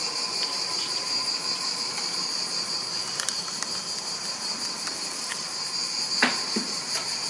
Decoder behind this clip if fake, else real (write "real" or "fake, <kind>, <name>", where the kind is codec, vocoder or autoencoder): real